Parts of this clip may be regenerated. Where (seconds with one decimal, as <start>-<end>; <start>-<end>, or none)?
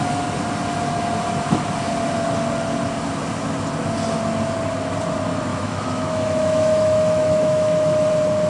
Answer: 5.5-8.1